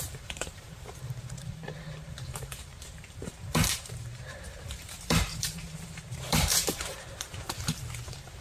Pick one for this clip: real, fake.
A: fake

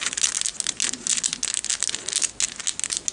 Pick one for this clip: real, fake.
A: real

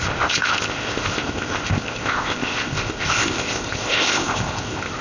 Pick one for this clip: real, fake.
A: fake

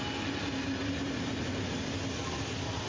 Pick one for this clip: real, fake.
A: real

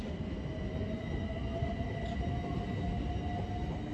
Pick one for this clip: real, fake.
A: real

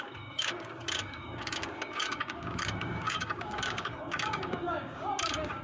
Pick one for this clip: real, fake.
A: fake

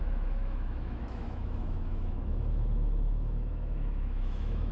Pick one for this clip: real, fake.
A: fake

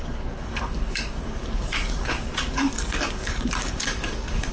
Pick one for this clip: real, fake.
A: fake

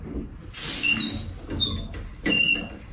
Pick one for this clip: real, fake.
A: real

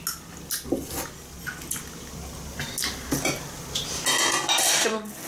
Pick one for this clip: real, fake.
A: real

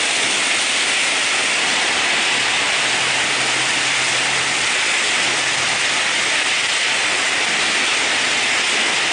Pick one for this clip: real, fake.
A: real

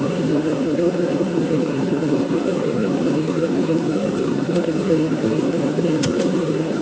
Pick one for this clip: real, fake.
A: fake